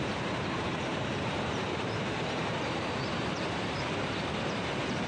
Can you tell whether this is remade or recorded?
remade